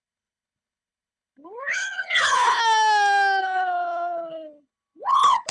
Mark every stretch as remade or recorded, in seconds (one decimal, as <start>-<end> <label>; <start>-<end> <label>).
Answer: 0.0-2.6 remade; 2.6-3.4 recorded; 3.4-5.5 remade